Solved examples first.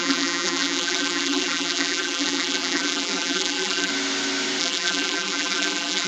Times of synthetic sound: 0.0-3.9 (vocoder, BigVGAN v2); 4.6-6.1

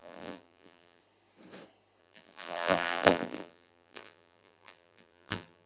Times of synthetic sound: 0.0-1.0 (vocoder, BigVGAN v2); 2.0-5.7